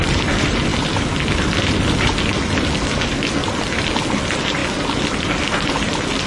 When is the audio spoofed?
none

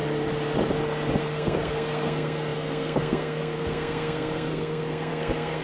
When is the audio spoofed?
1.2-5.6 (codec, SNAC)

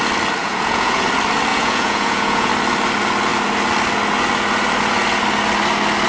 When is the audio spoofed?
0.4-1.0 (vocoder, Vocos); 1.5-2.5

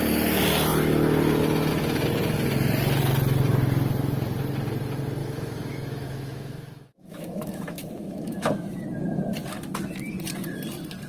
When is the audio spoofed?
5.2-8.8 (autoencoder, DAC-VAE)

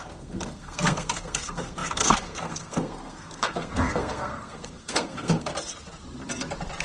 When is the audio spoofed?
0.0-5.5 (codec, SNAC)

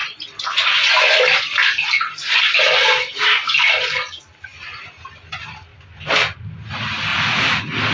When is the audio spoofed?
0.0-0.8 (vocoder, BigVGAN v2); 5.7-6.4

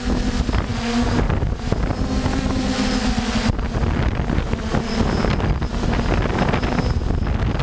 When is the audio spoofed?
none